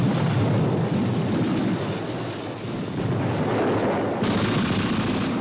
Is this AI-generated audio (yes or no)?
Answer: no